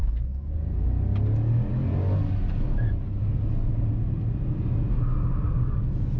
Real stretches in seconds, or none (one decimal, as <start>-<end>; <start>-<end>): 0.5-6.2